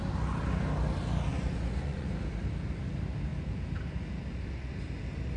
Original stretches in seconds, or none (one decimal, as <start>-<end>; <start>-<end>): 0.0-1.3; 2.1-5.4